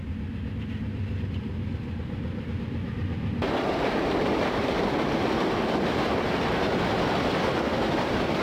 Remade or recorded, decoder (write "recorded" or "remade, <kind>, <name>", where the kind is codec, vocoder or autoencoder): recorded